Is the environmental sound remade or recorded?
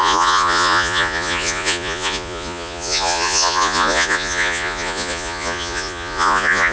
remade